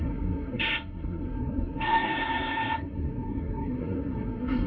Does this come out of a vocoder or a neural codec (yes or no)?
yes